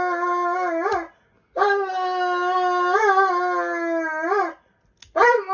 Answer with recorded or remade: recorded